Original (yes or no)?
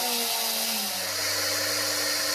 yes